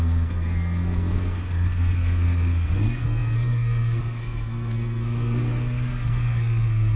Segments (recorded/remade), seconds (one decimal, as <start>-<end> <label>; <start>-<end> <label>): 0.0-7.0 remade